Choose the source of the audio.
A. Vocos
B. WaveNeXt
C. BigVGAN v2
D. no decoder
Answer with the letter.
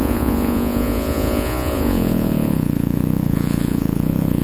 A